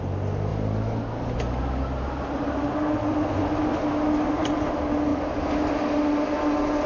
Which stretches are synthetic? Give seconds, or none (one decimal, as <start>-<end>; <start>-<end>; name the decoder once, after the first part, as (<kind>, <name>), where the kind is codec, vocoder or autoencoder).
none